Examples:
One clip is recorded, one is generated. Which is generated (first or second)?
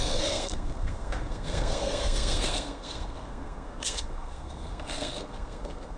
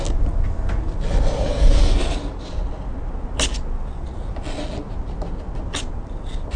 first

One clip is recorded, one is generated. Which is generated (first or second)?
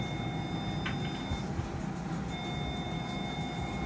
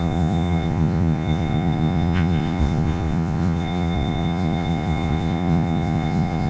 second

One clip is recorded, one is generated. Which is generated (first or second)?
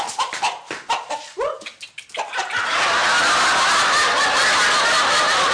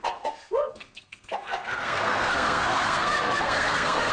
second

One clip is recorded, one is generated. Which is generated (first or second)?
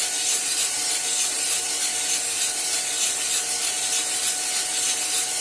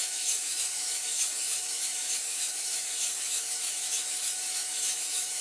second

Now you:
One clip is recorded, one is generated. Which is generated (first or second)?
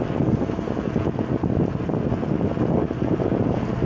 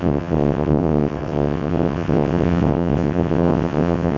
second